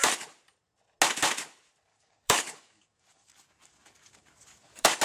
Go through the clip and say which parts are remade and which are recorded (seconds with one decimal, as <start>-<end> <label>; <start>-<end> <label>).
0.0-1.9 recorded; 1.9-5.0 remade